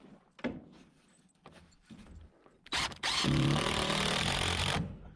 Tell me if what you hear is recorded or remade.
remade